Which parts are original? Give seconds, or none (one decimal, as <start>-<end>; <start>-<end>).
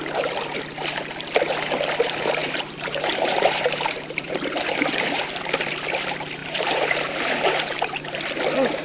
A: 0.0-2.4; 5.7-6.4; 8.2-8.8